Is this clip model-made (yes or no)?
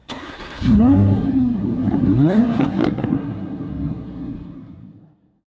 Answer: yes